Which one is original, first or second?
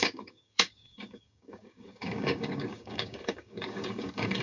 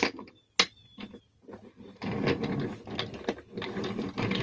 second